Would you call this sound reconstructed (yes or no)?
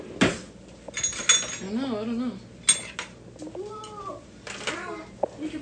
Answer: no